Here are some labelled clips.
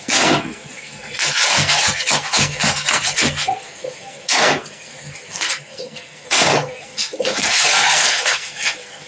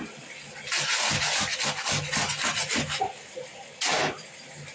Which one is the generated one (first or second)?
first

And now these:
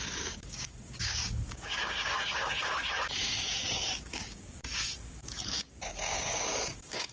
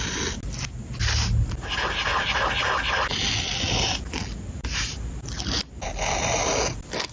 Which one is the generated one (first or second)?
first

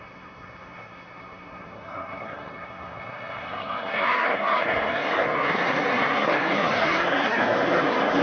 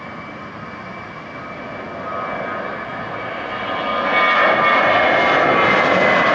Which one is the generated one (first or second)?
first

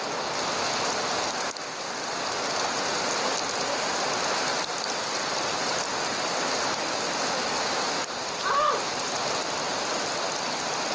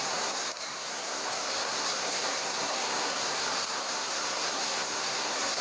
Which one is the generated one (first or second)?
second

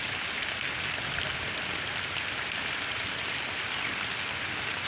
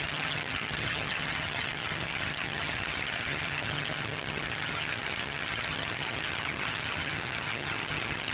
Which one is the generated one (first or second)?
second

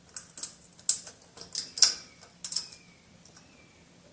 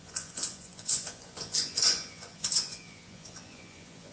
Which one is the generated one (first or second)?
second